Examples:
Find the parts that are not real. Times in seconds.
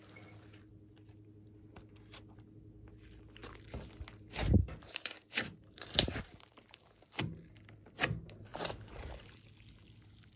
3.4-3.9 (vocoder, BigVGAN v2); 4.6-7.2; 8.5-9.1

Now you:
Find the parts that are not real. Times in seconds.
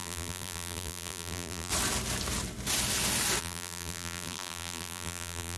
0.0-1.7 (vocoder, BigVGAN v2); 3.4-5.6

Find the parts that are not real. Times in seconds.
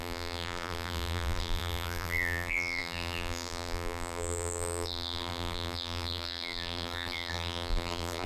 0.0-8.3 (vocoder, BigVGAN v2)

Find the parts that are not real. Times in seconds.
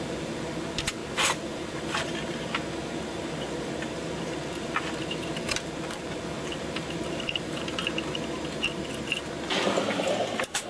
0.0-7.8 (vocoder, BigVGAN v2); 9.5-10.7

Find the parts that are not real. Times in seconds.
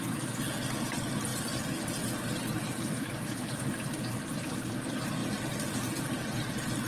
none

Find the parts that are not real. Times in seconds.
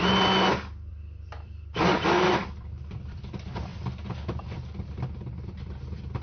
0.9-3.3 (vocoder, BigVGAN v2); 3.7-5.7